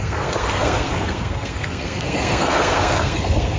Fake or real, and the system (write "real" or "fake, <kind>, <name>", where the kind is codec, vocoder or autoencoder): fake, codec, SNAC